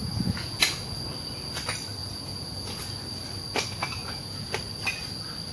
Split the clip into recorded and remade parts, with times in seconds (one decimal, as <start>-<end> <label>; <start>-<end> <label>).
0.0-0.7 remade; 0.7-2.0 recorded; 2.0-2.8 remade; 2.8-4.0 recorded; 4.0-4.5 remade; 4.5-5.5 recorded